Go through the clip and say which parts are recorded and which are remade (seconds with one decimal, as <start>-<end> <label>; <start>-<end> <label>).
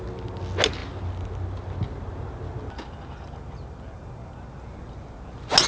0.0-5.7 recorded